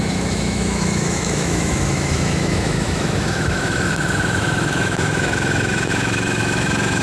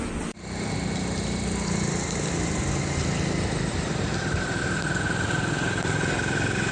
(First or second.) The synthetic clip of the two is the first